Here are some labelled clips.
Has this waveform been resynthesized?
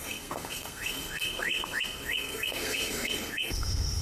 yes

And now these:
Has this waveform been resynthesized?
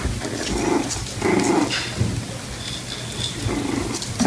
no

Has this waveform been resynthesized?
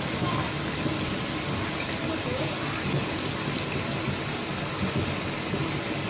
no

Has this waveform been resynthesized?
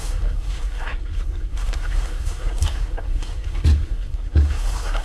yes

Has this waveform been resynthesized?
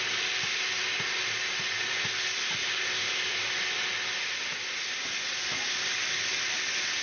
no